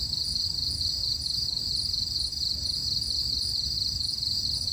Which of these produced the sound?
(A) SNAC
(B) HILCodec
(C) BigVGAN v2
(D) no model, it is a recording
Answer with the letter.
D